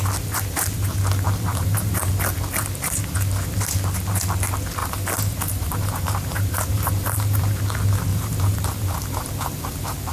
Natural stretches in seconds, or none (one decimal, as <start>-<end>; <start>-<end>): 0.0-1.5; 2.1-4.8; 7.6-8.1